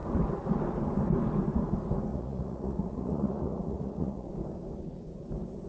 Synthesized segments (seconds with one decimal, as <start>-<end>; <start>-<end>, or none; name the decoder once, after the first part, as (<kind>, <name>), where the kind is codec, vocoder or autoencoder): 2.1-4.3 (vocoder, Vocos)